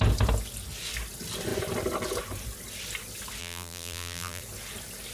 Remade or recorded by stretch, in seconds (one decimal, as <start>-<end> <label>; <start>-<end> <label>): 0.0-3.4 recorded; 3.4-4.4 remade; 4.4-5.1 recorded